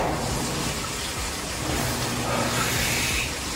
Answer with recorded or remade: recorded